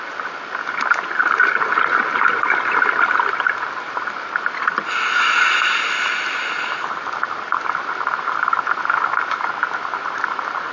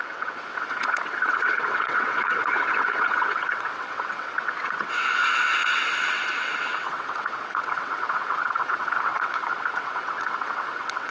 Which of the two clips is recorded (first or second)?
first